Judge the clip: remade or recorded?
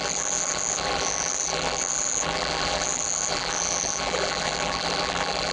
remade